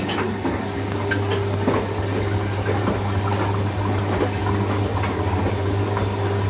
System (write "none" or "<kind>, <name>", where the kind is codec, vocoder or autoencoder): none